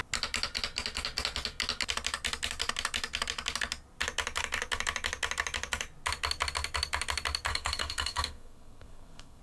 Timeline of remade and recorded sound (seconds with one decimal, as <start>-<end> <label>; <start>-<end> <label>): 0.0-7.5 recorded; 7.5-9.4 remade